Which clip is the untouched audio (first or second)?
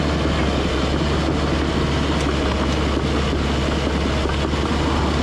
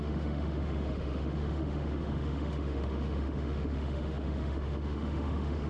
first